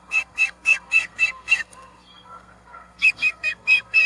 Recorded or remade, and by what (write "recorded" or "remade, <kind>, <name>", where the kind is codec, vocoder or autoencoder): remade, codec, SNAC